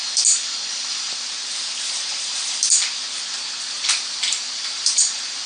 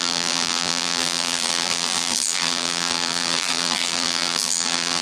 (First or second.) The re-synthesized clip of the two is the second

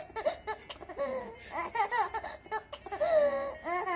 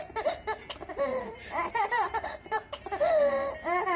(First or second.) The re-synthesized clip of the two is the second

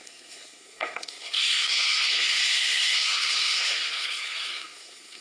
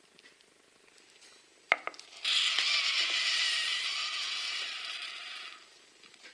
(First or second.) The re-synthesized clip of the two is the first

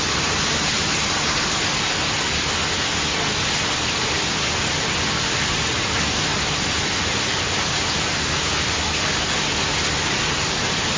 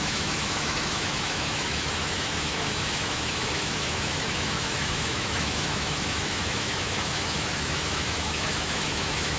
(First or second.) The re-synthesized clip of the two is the second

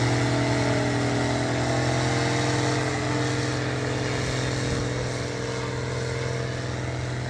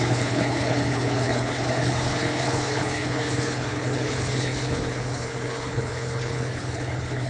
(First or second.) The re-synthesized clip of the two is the second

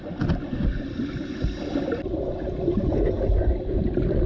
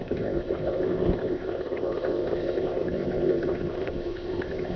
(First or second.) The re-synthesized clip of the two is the second